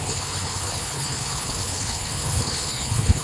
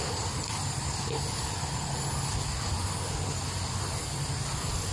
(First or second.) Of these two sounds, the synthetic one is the first